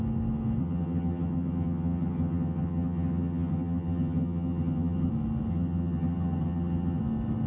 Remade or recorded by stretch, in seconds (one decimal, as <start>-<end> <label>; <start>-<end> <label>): 0.0-0.6 recorded; 0.6-5.1 remade; 5.1-5.5 recorded; 5.5-7.0 remade; 7.0-7.5 recorded